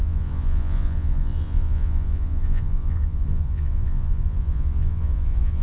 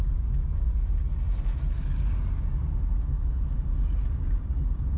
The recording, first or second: second